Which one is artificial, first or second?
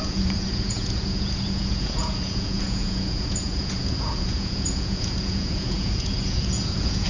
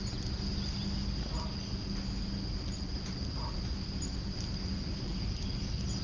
first